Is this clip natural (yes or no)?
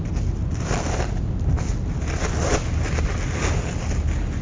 yes